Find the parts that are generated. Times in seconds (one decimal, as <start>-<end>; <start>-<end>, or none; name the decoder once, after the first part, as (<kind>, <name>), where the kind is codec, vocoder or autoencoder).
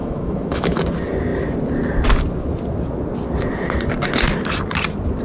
0.0-0.8 (autoencoder, DAC-VAE)